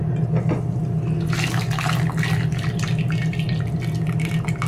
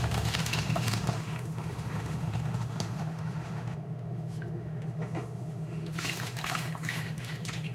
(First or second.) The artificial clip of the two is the second